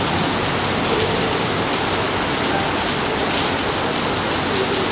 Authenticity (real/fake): real